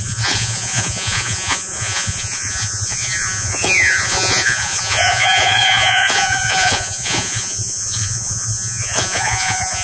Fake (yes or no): yes